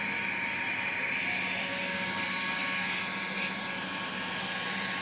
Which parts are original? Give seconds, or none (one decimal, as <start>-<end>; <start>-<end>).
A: 0.0-1.7; 3.0-5.0